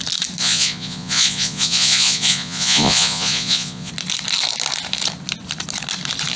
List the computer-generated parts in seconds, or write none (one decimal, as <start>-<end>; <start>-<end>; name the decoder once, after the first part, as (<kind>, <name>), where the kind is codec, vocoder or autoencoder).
0.4-3.9 (vocoder, Vocos)

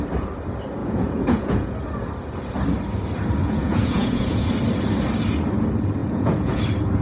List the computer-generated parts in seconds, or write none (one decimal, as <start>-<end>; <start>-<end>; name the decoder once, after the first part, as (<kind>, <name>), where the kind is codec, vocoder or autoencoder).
0.8-1.7 (vocoder, Vocos); 3.4-4.5; 6.0-6.6

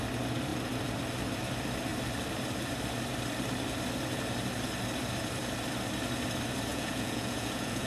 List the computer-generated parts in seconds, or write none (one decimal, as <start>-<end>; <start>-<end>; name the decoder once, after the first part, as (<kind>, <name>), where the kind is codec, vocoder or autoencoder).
6.7-7.9 (vocoder, Vocos)

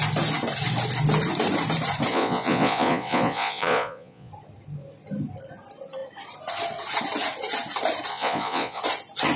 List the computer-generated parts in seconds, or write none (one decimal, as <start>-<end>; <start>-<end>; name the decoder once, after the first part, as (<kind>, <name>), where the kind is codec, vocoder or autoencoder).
2.1-4.3 (vocoder, Vocos); 8.1-8.8

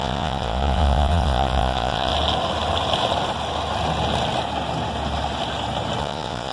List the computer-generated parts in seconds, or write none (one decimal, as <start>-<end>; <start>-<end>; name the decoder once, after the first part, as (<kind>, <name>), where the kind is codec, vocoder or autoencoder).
0.0-2.1 (vocoder, Vocos); 6.0-6.5